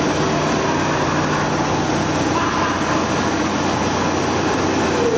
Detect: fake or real real